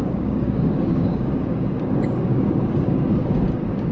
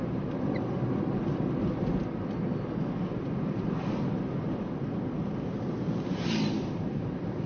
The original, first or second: second